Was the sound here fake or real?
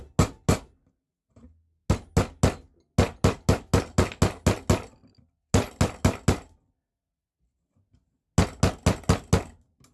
real